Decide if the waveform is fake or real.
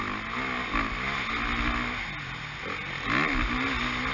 real